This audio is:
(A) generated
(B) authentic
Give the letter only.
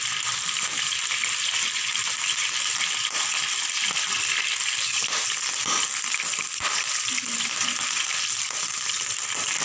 B